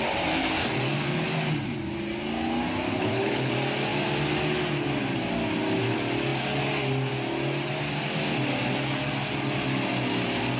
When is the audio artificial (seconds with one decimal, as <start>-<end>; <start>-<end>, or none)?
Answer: 2.9-3.5

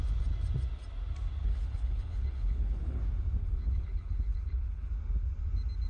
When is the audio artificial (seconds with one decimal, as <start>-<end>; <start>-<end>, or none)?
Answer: 1.4-3.0; 3.4-4.9

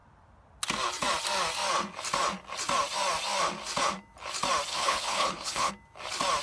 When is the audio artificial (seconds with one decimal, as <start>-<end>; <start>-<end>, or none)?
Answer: 4.7-5.7

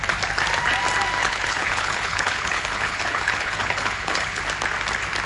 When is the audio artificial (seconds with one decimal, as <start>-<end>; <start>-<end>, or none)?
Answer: 1.2-4.4

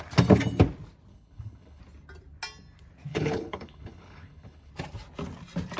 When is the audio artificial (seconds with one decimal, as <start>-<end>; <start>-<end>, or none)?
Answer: 1.1-1.8; 3.1-4.7

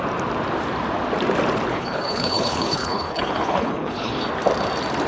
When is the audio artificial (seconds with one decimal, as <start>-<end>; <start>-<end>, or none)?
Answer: 1.7-4.2

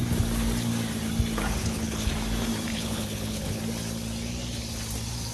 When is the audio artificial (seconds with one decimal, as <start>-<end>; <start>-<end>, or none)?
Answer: 1.6-2.1; 2.7-3.6

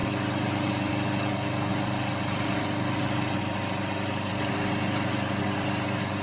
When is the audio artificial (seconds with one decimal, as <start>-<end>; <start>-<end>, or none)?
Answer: none